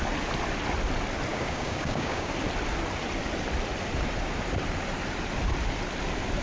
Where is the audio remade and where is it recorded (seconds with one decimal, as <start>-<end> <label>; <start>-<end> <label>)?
0.0-1.3 recorded; 1.3-2.3 remade; 2.3-6.4 recorded